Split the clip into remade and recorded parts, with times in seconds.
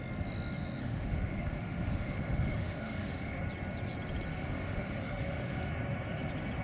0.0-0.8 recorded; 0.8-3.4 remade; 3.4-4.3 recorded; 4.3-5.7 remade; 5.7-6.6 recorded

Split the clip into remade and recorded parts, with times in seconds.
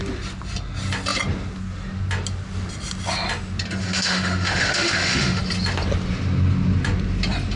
0.0-3.8 recorded; 3.8-5.4 remade; 5.4-7.6 recorded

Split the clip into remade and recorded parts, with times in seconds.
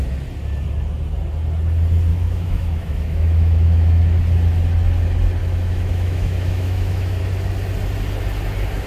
0.0-2.1 recorded; 2.1-4.0 remade; 4.0-5.4 recorded; 5.4-7.2 remade; 7.2-8.9 recorded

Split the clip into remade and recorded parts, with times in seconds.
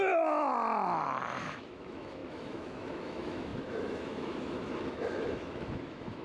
0.0-0.5 remade; 0.5-1.4 recorded; 1.4-6.2 remade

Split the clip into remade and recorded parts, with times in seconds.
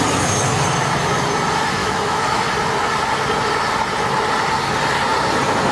0.0-1.8 recorded; 1.8-2.4 remade; 2.4-5.7 recorded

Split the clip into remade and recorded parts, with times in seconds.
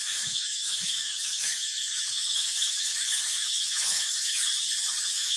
0.0-4.5 remade; 4.5-5.0 recorded; 5.0-5.4 remade